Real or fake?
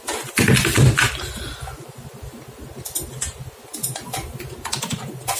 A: real